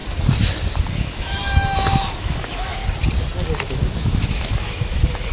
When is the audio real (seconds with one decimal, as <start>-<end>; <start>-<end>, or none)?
0.0-0.9; 2.8-3.6

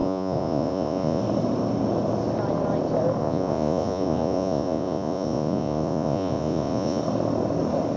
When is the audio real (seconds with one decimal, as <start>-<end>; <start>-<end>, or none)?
1.2-3.2; 7.0-8.0

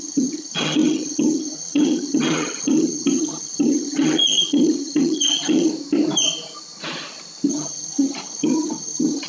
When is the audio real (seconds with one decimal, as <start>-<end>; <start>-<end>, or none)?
5.7-7.5

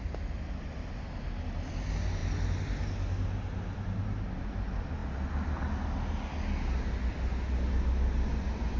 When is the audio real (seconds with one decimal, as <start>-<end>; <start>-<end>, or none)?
0.0-8.8

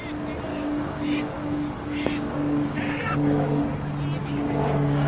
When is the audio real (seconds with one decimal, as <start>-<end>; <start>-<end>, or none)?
0.0-0.5; 3.6-4.2

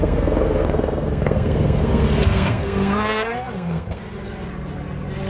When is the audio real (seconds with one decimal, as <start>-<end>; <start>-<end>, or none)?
4.0-5.3

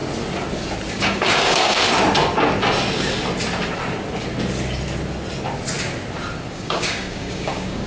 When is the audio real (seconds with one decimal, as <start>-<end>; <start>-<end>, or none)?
0.0-0.9; 1.8-6.5